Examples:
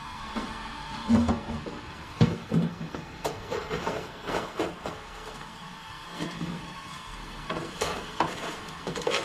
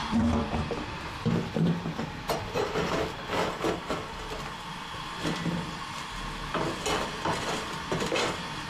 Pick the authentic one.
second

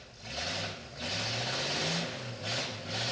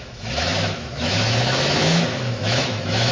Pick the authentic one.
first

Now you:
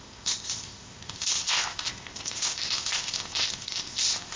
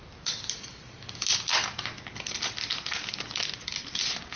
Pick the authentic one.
second